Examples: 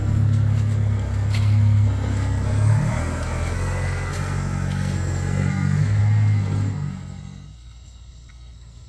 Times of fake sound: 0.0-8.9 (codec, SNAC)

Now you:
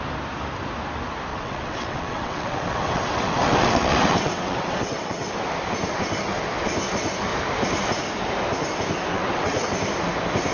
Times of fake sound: 1.3-5.3 (vocoder, WaveNeXt); 9.1-9.7

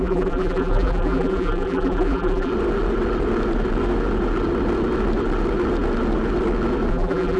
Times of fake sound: 0.0-2.5 (vocoder, BigVGAN v2); 6.9-7.4